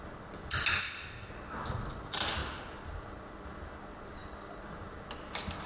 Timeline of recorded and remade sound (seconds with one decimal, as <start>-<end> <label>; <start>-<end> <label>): 0.0-0.8 recorded; 0.8-1.3 remade; 1.3-5.7 recorded